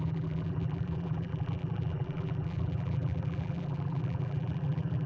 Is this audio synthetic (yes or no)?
yes